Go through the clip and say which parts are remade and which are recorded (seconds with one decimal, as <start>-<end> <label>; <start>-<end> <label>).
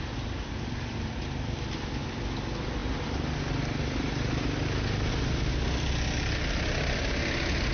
0.0-7.7 recorded